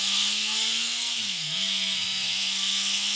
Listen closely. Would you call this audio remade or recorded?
remade